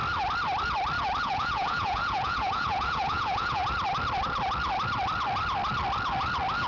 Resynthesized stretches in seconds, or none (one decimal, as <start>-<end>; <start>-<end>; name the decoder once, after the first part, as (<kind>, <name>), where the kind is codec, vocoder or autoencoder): 1.2-3.6 (vocoder, Vocos)